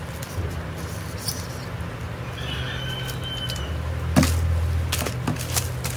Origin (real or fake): real